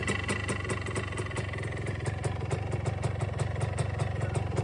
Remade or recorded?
recorded